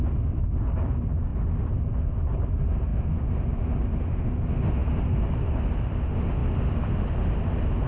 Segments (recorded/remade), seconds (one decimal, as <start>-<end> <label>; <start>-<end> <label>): 0.0-7.9 recorded